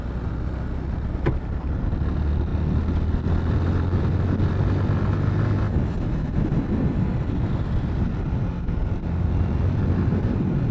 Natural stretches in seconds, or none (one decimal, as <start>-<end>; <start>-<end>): 0.0-10.7